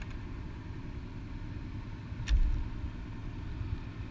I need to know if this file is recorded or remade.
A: recorded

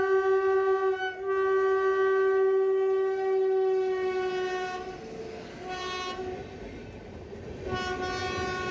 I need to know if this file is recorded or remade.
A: recorded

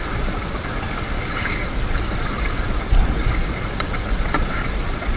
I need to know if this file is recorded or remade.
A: remade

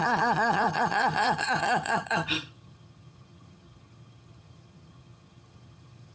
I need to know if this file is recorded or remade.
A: remade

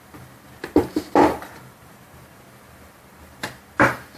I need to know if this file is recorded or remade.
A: remade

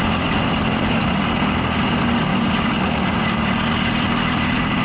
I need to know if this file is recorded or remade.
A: recorded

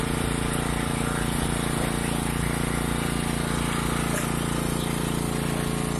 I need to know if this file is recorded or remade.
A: recorded